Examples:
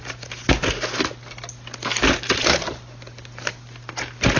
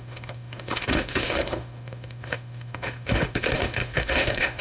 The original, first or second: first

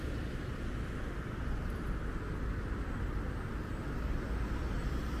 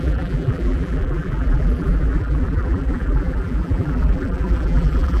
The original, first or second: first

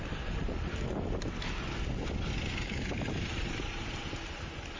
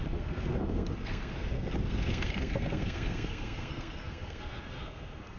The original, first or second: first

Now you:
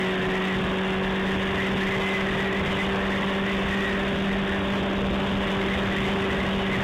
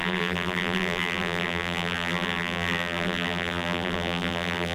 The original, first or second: first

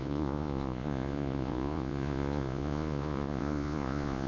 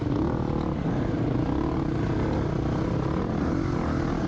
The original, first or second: second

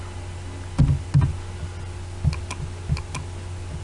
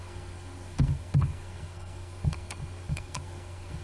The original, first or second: first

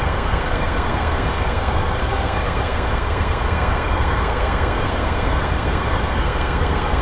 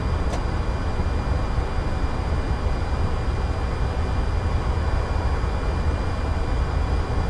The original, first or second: second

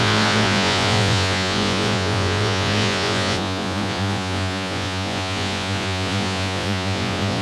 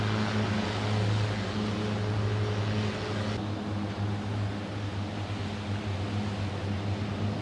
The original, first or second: second